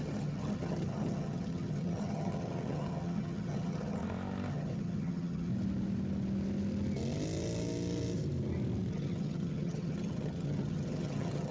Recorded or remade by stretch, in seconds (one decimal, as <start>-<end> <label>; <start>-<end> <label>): 0.0-4.0 remade; 4.0-4.5 recorded; 4.5-5.5 remade; 5.5-8.9 recorded; 8.9-11.5 remade